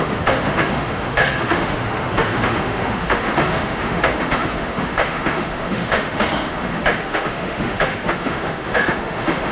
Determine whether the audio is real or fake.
fake